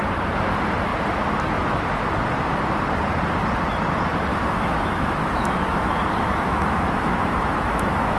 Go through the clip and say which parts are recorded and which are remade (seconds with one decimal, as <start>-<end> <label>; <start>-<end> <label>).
0.0-4.3 recorded; 4.3-8.2 remade